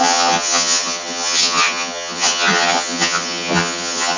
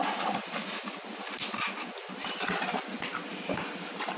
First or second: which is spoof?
first